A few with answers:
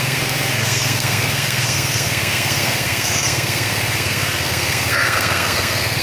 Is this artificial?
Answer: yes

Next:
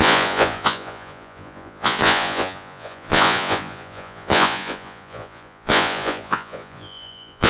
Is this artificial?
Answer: yes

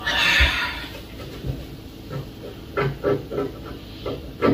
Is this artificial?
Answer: no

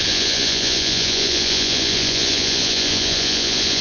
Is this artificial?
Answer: yes